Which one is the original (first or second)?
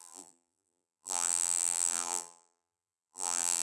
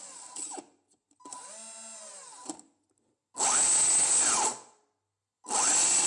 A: second